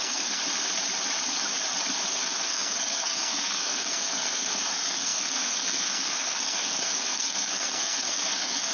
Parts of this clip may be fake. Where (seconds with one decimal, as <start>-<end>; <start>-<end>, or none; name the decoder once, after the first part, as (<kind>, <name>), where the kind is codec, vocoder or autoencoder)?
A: 0.0-0.4 (codec, SNAC); 2.1-8.7